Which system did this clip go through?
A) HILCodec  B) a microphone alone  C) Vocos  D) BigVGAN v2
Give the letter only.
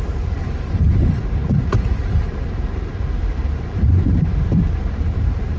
D